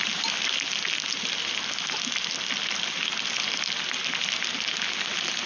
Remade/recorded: recorded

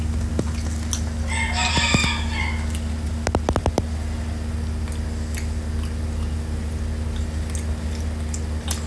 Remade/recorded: recorded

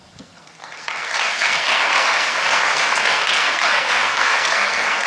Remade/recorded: remade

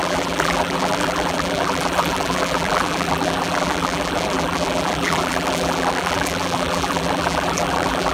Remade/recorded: remade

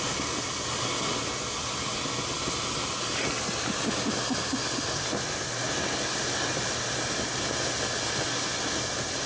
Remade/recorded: recorded